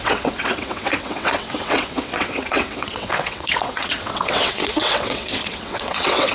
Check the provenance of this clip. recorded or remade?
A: remade